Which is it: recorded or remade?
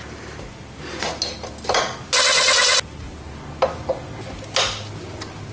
recorded